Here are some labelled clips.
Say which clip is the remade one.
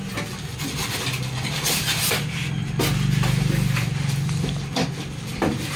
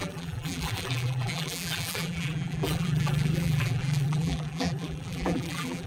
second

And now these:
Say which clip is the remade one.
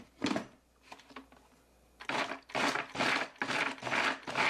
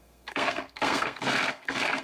second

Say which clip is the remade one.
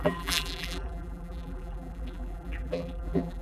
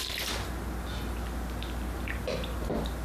first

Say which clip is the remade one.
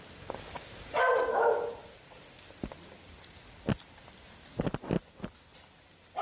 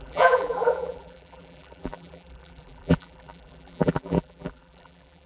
second